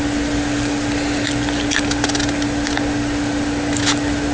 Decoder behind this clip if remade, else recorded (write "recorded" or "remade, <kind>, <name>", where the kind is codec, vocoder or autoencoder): recorded